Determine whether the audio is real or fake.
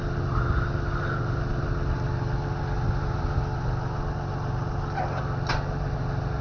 real